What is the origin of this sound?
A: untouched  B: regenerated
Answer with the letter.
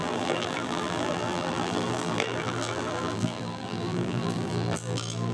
B